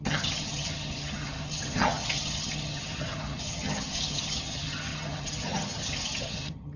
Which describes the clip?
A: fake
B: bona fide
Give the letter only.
A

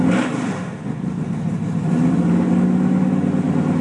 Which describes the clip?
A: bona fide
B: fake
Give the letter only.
A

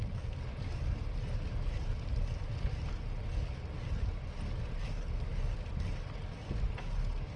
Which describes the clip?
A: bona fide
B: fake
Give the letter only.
A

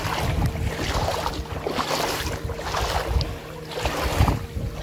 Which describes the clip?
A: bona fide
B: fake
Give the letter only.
A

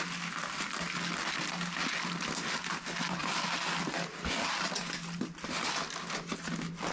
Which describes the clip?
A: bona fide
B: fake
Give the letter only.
A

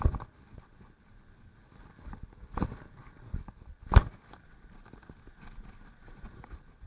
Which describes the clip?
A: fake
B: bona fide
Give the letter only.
B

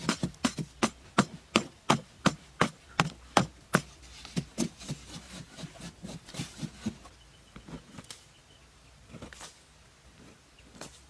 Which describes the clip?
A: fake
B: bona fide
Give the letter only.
B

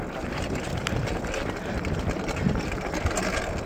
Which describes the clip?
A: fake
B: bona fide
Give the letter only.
B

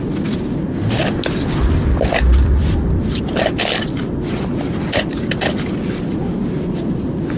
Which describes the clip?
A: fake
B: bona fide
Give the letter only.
B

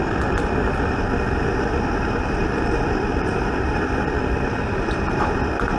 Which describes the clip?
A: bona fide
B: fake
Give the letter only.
B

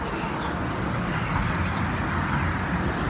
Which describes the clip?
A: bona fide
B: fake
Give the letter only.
A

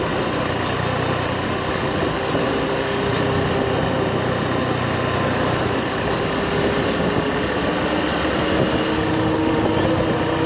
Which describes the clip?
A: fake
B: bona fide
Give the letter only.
B